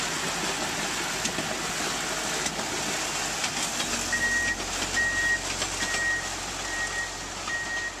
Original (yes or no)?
yes